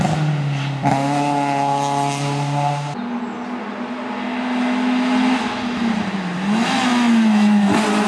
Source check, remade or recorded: recorded